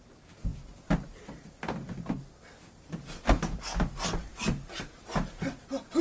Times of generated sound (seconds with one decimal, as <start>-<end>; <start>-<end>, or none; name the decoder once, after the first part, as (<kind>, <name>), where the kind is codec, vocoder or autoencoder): none